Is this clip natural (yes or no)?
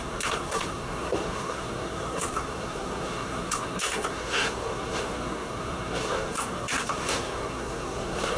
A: no